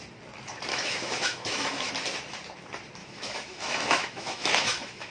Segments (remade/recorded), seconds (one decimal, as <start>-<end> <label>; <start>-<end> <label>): 0.0-0.7 recorded; 0.7-1.9 remade; 1.9-3.0 recorded; 3.0-5.1 remade